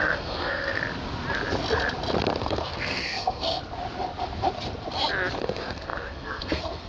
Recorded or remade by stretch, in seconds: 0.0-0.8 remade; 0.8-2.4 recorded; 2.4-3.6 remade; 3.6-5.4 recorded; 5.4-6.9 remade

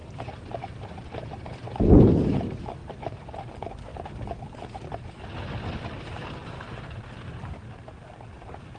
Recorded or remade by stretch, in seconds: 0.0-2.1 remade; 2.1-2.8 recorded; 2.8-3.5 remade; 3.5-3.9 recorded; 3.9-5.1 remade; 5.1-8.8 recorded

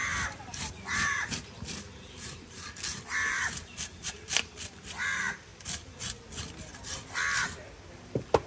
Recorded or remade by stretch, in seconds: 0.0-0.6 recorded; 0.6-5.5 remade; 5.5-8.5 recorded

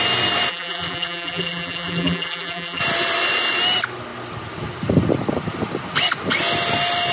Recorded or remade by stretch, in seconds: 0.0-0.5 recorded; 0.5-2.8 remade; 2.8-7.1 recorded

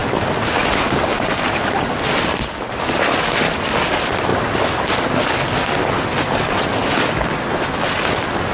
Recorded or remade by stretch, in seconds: 0.0-8.5 recorded

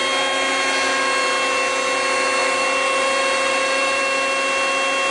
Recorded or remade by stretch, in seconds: 0.0-2.4 recorded; 2.4-4.0 remade; 4.0-5.1 recorded

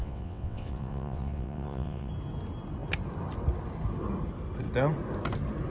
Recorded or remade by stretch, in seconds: 0.0-2.1 remade; 2.1-5.7 recorded